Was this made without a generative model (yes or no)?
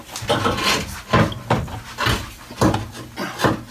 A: yes